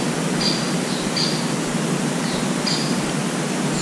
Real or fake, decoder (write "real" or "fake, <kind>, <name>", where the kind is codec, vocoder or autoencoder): real